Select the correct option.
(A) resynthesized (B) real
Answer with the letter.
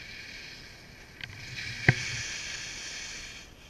B